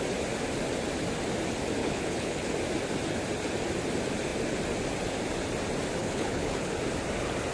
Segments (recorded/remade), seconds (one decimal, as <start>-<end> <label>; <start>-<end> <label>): 0.0-1.8 recorded; 1.8-2.5 remade; 2.5-6.0 recorded; 6.0-6.7 remade; 6.7-7.5 recorded